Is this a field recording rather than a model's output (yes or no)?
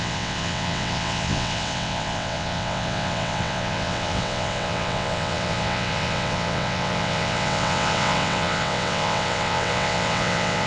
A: no